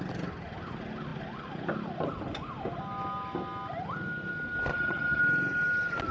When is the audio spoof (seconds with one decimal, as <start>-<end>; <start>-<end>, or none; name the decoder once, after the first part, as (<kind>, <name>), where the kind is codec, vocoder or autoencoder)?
4.7-5.2 (vocoder, HiFi-GAN)